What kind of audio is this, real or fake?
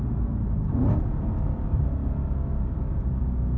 real